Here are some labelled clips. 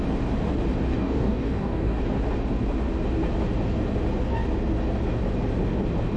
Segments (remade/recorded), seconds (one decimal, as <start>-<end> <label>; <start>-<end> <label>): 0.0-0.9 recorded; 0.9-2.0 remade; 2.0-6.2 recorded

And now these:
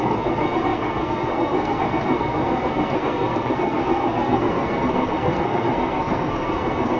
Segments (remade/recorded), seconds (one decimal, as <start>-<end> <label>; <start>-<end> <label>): 0.0-7.0 remade

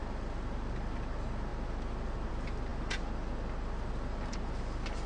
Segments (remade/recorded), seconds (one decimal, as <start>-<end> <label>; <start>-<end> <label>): 0.0-5.1 recorded

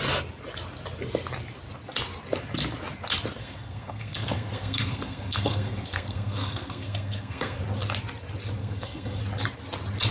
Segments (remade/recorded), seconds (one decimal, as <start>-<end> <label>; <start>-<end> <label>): 0.0-3.4 recorded; 3.4-7.6 remade; 7.6-8.6 recorded; 8.6-9.2 remade; 9.2-10.1 recorded

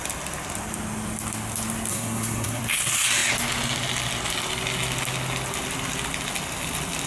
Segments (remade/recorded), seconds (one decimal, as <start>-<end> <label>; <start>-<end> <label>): 0.0-1.9 recorded; 1.9-2.6 remade; 2.6-7.1 recorded

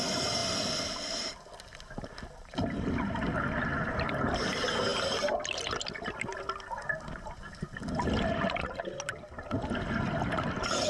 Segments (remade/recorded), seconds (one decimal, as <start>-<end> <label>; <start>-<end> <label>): 0.0-10.9 recorded